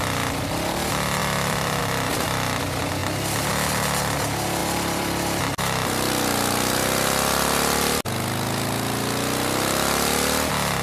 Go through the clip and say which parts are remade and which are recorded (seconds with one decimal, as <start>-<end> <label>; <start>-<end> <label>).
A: 0.0-1.2 recorded; 1.2-1.8 remade; 1.8-4.6 recorded; 4.6-5.4 remade; 5.4-10.8 recorded